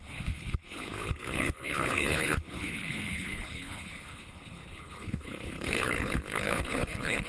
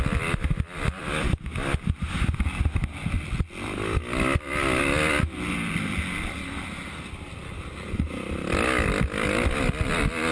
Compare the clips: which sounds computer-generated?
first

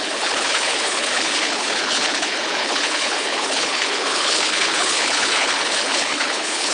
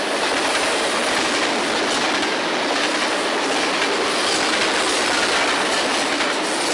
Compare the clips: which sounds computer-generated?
first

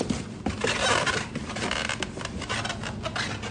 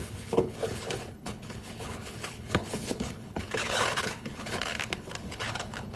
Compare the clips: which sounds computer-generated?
second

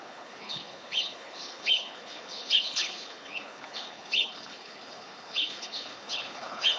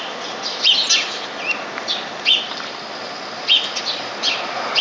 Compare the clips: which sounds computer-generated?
first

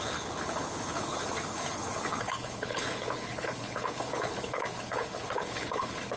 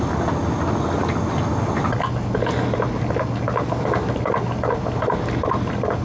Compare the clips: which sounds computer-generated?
first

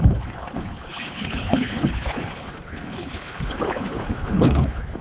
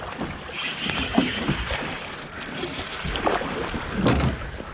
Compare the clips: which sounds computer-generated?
first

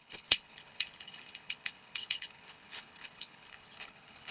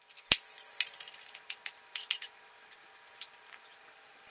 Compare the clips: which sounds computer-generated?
first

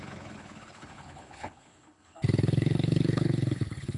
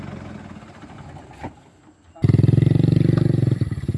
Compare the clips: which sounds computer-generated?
first